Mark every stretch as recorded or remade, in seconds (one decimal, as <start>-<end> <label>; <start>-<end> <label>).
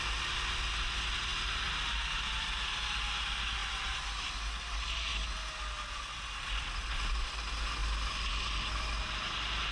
0.0-9.7 recorded